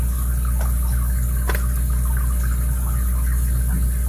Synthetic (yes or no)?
no